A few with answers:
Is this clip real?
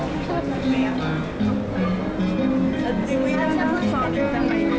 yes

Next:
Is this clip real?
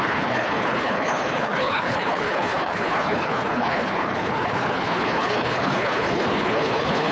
no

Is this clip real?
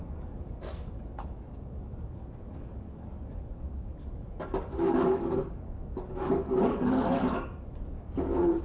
no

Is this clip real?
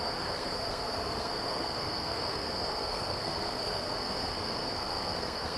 no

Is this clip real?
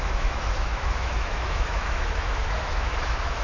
no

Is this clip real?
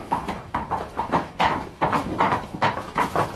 no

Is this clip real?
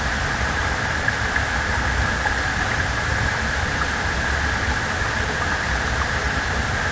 yes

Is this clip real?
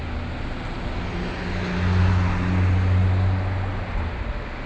yes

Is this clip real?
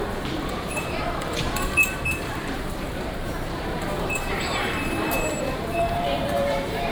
no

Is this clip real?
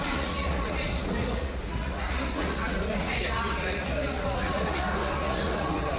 no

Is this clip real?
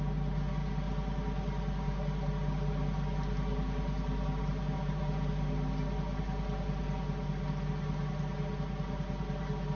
yes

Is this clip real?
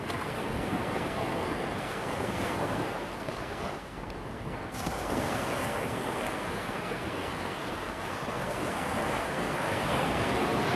no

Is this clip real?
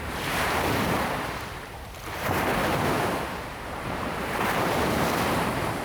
no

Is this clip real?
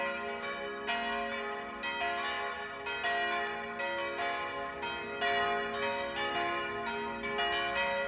yes